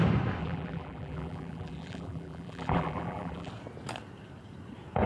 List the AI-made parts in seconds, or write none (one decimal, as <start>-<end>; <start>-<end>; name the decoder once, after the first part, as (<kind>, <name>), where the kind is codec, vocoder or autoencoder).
0.4-3.5 (vocoder, BigVGAN v2)